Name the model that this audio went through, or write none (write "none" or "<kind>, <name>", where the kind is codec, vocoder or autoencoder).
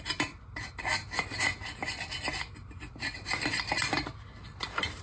none